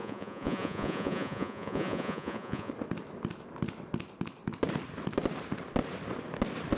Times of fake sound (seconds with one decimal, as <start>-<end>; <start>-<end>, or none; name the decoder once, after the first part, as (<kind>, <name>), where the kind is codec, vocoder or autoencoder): 0.0-2.7 (vocoder, Vocos)